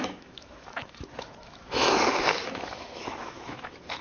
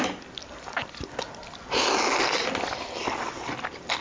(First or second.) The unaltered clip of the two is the second